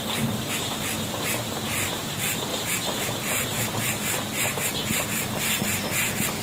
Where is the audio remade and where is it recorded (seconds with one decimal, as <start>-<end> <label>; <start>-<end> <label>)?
0.0-2.5 recorded; 2.5-3.9 remade; 3.9-6.4 recorded